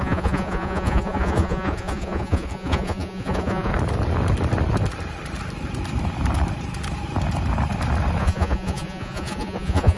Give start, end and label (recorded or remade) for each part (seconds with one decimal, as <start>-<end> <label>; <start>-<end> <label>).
0.0-3.7 remade; 3.7-8.2 recorded; 8.2-10.0 remade